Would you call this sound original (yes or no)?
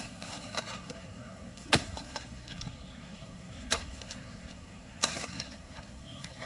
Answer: no